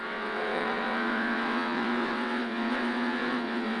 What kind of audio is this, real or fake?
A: fake